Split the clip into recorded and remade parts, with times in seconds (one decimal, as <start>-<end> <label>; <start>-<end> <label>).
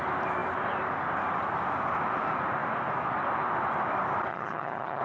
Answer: 0.0-4.3 recorded; 4.3-5.0 remade